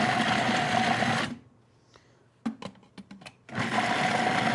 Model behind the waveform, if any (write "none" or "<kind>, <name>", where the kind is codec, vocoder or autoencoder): none